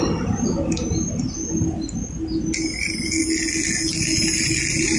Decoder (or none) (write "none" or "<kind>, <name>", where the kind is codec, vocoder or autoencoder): none